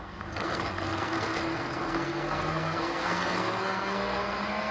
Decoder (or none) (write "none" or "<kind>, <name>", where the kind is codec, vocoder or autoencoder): codec, SNAC